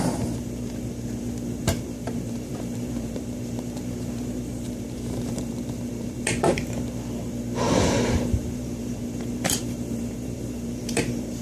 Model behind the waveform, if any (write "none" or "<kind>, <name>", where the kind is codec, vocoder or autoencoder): vocoder, BigVGAN v2